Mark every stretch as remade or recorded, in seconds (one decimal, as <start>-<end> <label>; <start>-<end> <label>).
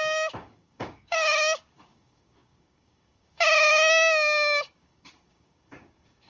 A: 0.0-6.3 remade